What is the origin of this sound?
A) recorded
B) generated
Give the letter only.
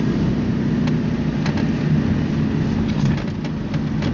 A